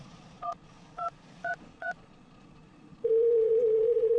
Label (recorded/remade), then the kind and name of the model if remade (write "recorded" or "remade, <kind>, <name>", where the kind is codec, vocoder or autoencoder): remade, vocoder, Vocos